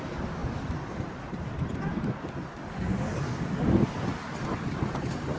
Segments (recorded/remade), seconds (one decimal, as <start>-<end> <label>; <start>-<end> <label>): 0.0-5.4 recorded